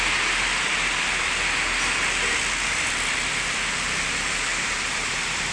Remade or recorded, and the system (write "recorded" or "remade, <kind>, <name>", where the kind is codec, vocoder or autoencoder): recorded